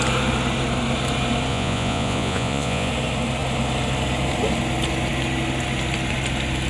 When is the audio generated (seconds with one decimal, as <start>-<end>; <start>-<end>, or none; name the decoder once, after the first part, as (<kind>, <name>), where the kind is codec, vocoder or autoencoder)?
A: 1.5-2.9 (vocoder, Vocos)